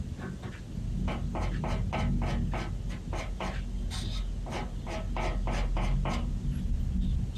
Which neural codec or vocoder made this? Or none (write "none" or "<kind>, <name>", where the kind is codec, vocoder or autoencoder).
none